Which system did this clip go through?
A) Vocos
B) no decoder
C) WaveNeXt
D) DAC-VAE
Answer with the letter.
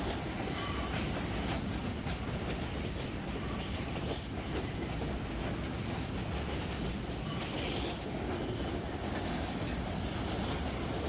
B